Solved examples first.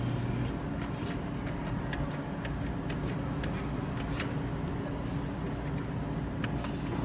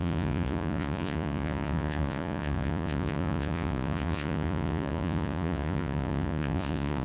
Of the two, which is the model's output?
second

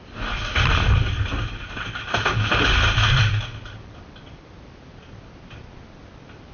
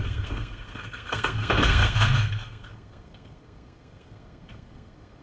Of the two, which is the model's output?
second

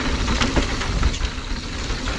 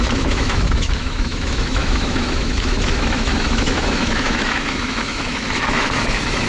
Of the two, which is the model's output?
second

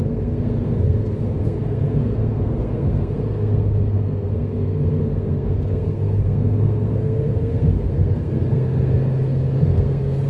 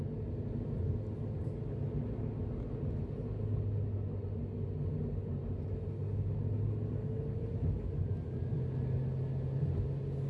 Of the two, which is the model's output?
first